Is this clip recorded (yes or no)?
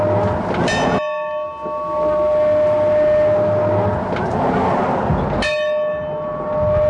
yes